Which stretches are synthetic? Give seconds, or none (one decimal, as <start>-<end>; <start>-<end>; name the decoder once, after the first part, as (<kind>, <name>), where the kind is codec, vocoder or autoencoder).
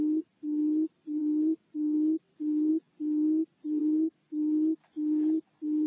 none